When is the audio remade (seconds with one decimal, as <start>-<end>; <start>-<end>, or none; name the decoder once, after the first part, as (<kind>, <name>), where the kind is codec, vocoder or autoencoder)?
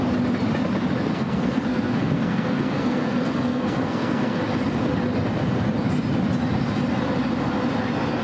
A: 1.1-4.4 (codec, SNAC)